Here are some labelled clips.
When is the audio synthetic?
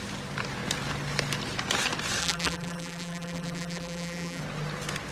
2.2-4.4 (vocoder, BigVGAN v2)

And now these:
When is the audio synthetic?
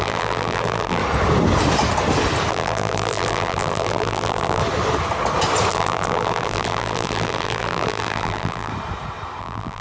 0.0-1.0 (vocoder, BigVGAN v2); 2.5-4.6; 5.7-8.7; 9.4-9.8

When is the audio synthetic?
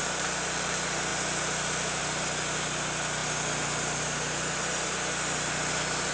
1.1-2.0 (vocoder, BigVGAN v2); 3.2-4.5